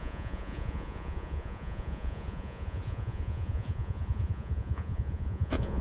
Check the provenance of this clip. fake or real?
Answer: fake